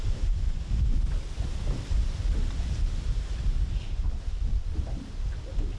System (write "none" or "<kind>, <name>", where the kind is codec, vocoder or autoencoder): none